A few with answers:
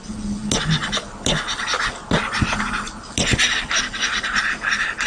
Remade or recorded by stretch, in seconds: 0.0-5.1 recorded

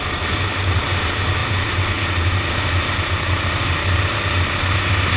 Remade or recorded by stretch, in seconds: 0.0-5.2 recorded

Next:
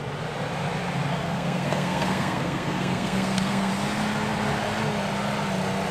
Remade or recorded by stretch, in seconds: 0.0-1.1 recorded; 1.1-3.7 remade; 3.7-5.9 recorded